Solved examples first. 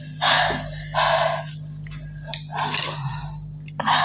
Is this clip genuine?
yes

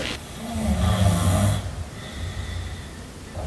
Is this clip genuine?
yes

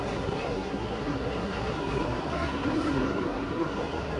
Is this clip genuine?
no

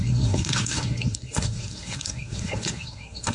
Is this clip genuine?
no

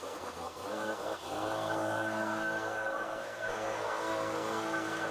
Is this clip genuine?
no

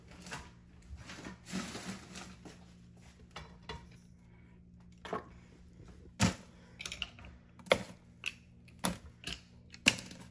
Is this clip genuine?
yes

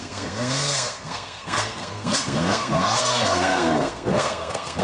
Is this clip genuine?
no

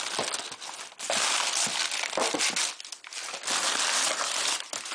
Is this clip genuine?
yes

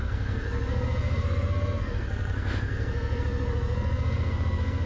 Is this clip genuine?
no